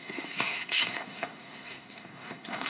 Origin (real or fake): fake